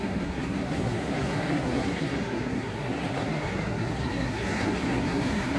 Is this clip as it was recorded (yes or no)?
no